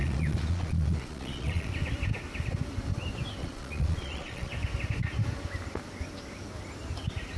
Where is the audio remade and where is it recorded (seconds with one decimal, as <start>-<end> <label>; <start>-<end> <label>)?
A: 0.0-1.7 remade; 1.7-3.4 recorded; 3.4-4.5 remade; 4.5-7.4 recorded